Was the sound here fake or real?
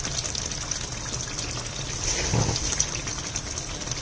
real